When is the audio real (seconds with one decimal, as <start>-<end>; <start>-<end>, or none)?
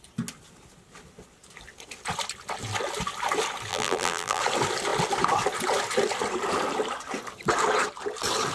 0.0-3.7; 4.4-8.5